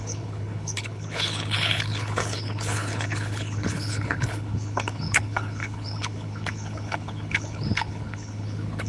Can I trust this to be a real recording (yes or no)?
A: no